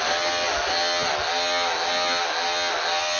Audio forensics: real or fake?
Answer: real